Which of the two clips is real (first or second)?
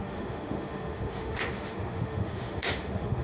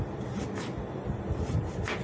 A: second